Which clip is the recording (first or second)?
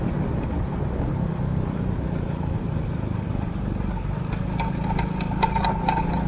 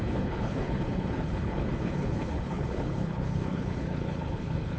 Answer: first